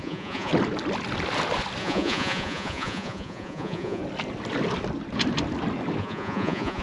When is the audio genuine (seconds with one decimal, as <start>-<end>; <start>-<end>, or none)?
0.5-1.8; 4.0-6.0